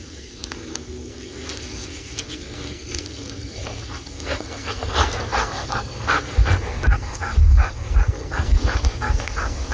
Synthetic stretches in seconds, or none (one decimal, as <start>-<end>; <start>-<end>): 0.0-9.7